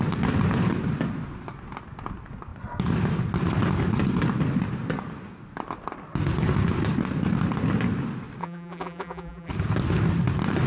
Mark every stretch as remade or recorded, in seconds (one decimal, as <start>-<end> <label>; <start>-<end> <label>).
0.0-8.4 recorded; 8.4-9.5 remade; 9.5-10.7 recorded